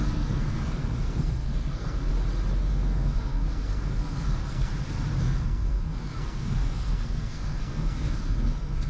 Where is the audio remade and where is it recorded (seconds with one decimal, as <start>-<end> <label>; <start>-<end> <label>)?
0.0-2.1 remade; 2.1-2.7 recorded; 2.7-4.7 remade; 4.7-5.2 recorded; 5.2-8.9 remade